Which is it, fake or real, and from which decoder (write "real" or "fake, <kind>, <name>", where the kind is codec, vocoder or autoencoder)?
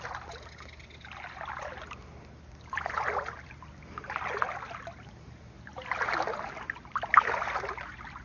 real